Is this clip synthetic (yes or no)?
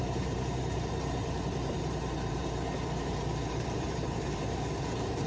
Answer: yes